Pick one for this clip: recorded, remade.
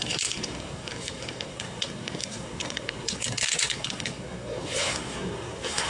remade